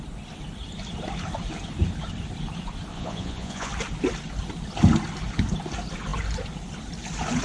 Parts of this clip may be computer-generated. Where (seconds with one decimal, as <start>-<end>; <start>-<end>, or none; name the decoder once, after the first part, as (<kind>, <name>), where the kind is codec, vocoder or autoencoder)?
2.9-3.7 (vocoder, Vocos)